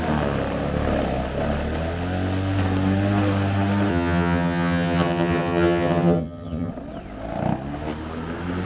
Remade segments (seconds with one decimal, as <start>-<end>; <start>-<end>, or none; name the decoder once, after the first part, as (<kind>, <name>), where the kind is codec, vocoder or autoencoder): 3.9-6.7 (vocoder, HiFi-GAN)